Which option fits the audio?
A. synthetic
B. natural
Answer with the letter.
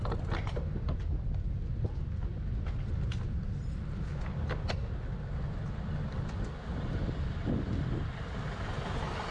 B